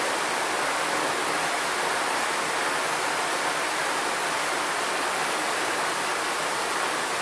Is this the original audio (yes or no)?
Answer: yes